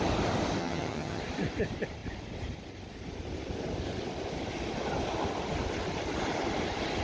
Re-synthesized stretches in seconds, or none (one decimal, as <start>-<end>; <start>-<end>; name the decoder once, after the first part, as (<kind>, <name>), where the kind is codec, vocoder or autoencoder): 0.6-1.2 (vocoder, HiFi-GAN)